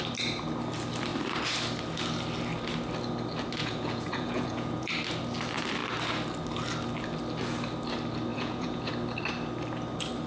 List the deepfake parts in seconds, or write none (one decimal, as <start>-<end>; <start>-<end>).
3.6-4.9; 8.3-8.9